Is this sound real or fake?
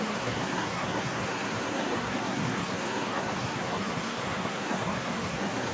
fake